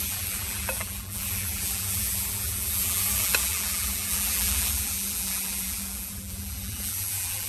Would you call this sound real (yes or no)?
no